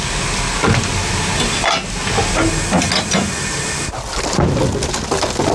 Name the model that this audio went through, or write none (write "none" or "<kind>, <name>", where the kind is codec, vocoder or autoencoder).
none